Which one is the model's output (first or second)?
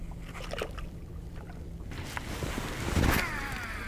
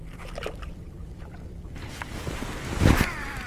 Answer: second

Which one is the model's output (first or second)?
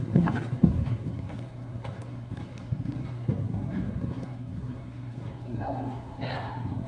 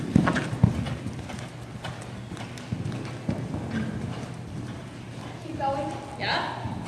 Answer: first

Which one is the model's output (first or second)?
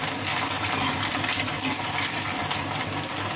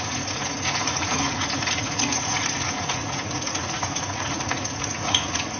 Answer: second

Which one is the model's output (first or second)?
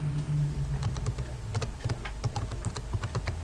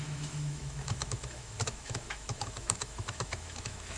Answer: second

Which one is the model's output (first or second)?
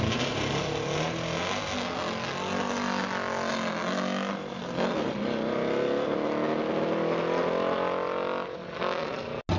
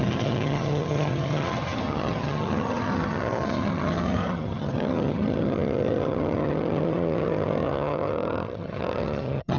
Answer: second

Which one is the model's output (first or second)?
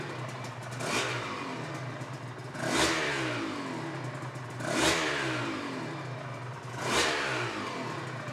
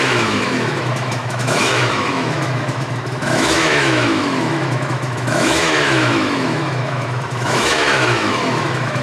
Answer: second